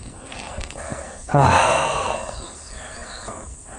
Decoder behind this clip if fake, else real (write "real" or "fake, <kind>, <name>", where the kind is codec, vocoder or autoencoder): fake, codec, SNAC